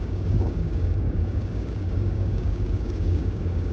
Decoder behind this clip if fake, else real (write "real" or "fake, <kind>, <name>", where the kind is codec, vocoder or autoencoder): fake, codec, DAC